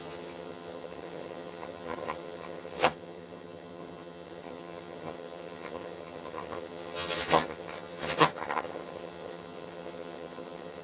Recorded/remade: remade